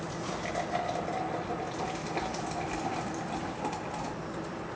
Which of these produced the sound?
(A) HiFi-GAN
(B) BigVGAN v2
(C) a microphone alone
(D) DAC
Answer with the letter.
C